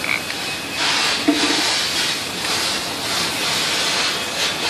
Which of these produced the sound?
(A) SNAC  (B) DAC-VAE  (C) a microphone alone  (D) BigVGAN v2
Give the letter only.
C